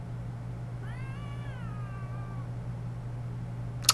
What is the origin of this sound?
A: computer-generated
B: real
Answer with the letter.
B